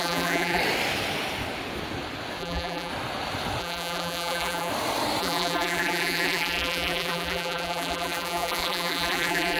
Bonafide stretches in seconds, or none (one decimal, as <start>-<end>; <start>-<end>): 0.6-2.4; 2.9-3.6; 4.7-5.2